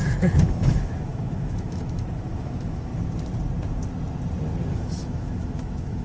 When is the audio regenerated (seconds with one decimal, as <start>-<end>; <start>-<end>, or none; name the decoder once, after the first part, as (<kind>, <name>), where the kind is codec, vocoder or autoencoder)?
0.0-2.9 (autoencoder, DAC-VAE); 4.7-6.0